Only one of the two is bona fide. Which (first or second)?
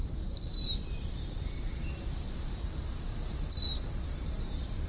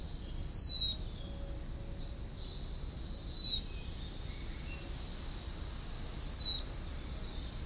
second